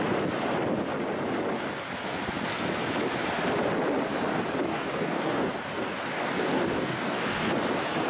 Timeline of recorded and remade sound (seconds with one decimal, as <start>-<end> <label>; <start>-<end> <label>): 0.0-4.7 recorded; 4.7-5.5 remade; 5.5-6.1 recorded; 6.1-7.5 remade; 7.5-8.1 recorded